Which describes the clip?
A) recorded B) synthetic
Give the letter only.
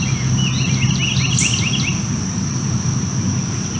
A